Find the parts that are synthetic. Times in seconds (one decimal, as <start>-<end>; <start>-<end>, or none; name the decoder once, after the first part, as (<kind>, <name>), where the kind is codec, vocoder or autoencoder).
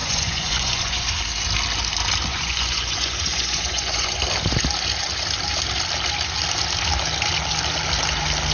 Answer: 0.0-1.1 (vocoder, Vocos); 2.3-4.2